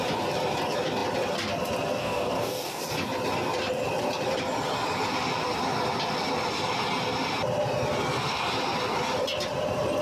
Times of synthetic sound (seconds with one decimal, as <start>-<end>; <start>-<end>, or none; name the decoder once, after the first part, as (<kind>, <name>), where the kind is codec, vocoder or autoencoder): 2.0-2.8 (codec, DAC)